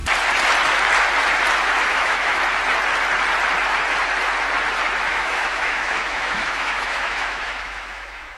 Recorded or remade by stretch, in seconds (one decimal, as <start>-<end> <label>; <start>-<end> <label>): 0.0-1.9 recorded; 1.9-2.4 remade; 2.4-5.1 recorded; 5.1-8.4 remade